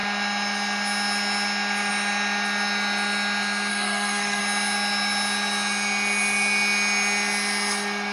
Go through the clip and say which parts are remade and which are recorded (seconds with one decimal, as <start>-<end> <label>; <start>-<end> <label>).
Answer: 0.0-3.7 recorded; 3.7-4.4 remade; 4.4-8.1 recorded